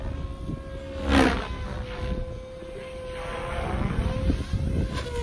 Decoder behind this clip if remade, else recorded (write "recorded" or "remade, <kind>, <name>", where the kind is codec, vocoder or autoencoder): recorded